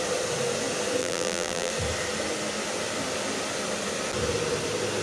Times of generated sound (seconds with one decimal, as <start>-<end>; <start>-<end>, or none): 1.0-1.7